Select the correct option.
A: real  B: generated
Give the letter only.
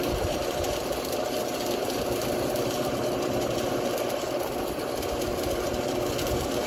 A